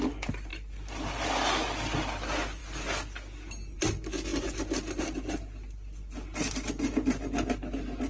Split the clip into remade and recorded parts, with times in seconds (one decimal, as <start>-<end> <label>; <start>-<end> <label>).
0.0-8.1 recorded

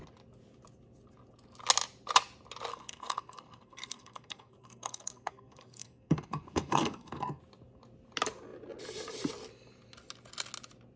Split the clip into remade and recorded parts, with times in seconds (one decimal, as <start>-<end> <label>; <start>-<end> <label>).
0.0-2.7 recorded; 2.7-7.4 remade; 7.4-11.0 recorded

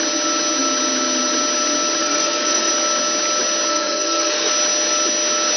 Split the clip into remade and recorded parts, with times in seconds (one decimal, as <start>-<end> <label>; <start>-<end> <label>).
0.0-2.0 recorded; 2.0-2.7 remade; 2.7-3.7 recorded; 3.7-4.5 remade; 4.5-5.6 recorded